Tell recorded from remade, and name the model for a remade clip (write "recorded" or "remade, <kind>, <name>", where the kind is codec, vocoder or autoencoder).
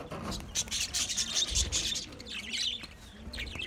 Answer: remade, vocoder, BigVGAN v2